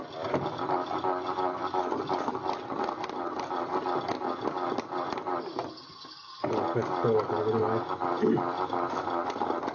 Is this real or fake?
real